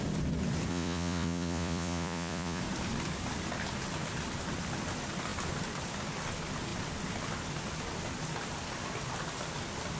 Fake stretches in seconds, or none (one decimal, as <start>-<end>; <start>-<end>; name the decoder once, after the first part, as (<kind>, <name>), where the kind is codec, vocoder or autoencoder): 0.7-2.6 (vocoder, Vocos)